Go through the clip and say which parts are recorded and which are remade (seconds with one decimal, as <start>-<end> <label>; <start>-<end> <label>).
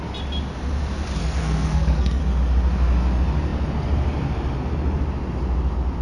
0.0-1.2 recorded; 1.2-2.2 remade; 2.2-6.0 recorded